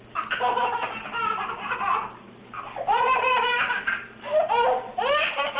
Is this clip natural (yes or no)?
yes